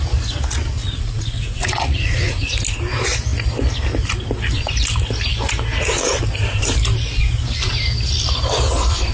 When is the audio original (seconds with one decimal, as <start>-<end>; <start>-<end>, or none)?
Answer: 0.0-0.8; 2.6-9.1